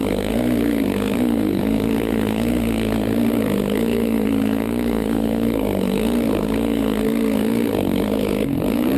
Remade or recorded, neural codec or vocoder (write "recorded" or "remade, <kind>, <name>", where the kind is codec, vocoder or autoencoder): remade, codec, SNAC